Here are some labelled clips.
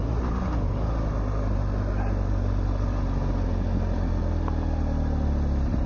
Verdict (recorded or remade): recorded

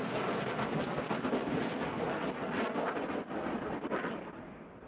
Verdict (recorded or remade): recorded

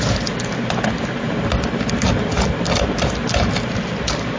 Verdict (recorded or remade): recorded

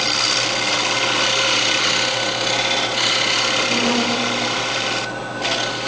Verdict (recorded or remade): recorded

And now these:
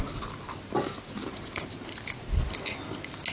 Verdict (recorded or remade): recorded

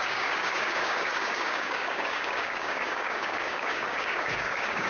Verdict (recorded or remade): remade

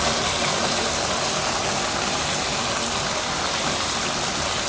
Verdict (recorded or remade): recorded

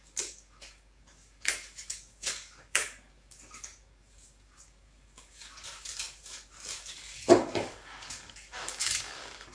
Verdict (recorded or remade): remade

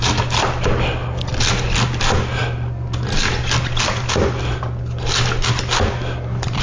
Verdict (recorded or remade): recorded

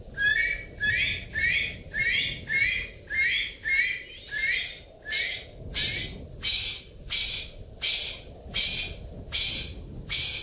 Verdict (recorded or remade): recorded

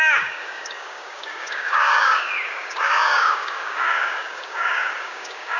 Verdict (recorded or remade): remade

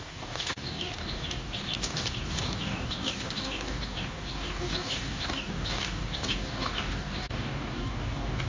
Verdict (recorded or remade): remade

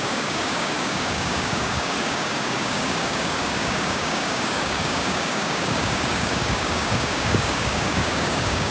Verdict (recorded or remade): remade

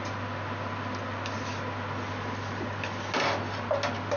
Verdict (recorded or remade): recorded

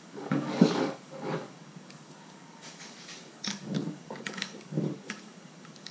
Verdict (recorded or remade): remade